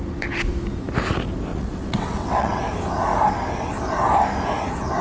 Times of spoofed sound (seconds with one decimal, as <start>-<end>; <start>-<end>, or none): 1.5-2.6